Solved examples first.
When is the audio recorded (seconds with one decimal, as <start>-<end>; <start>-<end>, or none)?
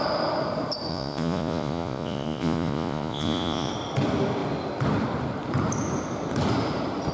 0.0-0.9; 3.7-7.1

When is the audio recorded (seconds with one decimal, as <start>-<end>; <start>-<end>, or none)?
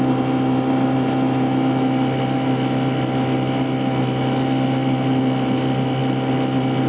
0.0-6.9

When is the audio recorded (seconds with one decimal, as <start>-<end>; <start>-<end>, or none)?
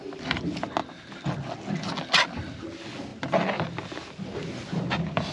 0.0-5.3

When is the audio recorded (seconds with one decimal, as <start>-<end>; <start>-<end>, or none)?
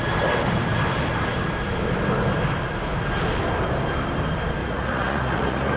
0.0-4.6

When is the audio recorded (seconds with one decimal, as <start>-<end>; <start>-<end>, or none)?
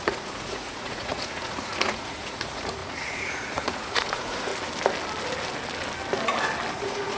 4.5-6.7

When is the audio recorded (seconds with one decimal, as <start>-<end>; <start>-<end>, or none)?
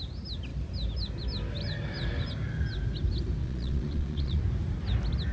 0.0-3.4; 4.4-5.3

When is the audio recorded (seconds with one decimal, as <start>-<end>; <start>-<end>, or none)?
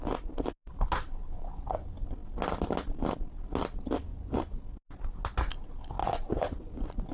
0.0-4.1; 4.6-6.0